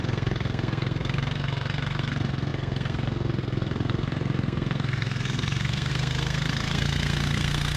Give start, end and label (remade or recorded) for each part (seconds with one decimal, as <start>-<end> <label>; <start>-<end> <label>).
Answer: 0.0-7.8 remade

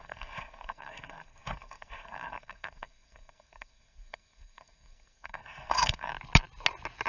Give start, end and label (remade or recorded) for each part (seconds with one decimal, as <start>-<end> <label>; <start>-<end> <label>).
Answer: 0.0-6.1 remade; 6.1-7.1 recorded